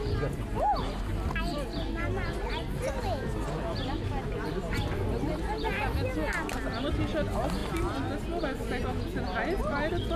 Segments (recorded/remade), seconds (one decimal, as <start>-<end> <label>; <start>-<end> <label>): 0.0-10.2 recorded